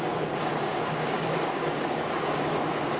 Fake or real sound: fake